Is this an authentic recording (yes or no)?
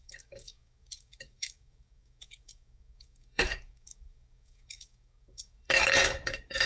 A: no